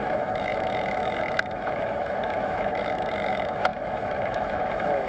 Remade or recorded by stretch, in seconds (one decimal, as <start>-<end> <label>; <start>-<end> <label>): 0.0-5.1 remade